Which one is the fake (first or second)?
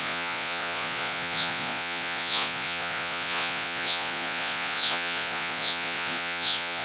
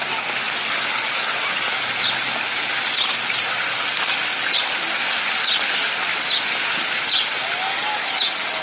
first